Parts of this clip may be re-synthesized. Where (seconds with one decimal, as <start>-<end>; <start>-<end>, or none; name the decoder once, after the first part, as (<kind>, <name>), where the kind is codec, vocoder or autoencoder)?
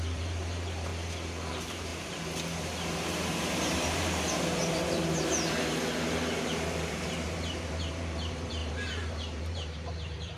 0.0-0.9 (vocoder, BigVGAN v2); 1.5-10.4